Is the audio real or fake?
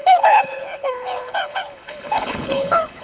fake